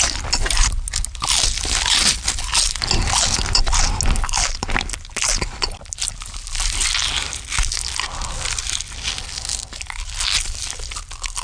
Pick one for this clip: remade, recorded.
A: recorded